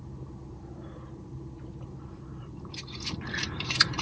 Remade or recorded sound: remade